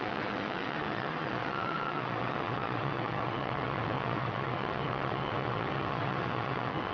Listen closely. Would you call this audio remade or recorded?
remade